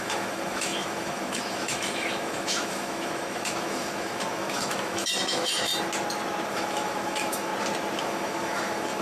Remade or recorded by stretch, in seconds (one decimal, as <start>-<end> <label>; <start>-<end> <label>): 0.0-5.7 remade; 5.7-6.5 recorded; 6.5-7.5 remade; 7.5-8.0 recorded; 8.0-9.0 remade